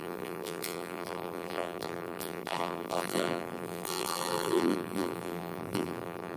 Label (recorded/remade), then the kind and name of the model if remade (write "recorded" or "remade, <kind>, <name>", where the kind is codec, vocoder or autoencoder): remade, vocoder, BigVGAN v2